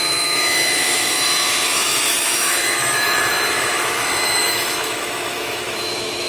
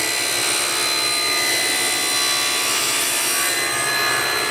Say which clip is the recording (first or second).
second